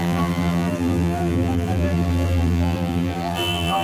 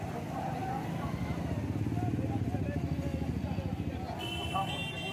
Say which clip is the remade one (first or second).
first